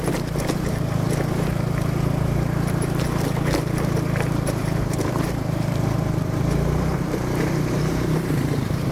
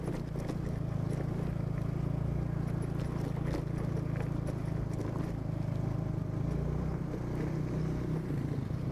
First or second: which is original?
second